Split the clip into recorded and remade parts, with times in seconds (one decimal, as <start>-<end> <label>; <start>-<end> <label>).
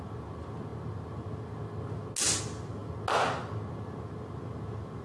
0.0-5.0 recorded